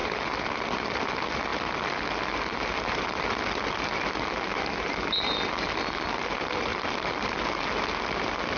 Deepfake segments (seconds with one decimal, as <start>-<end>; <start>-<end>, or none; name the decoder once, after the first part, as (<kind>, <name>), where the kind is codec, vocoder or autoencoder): 0.0-1.0 (vocoder, BigVGAN v2); 1.5-4.1; 6.7-7.6